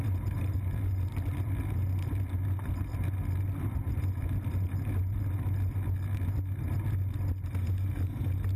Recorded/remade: recorded